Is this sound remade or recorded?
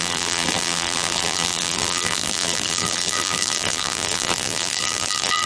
remade